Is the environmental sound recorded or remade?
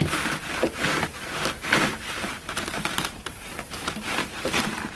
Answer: remade